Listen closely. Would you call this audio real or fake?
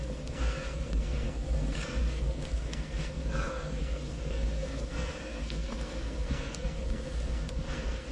fake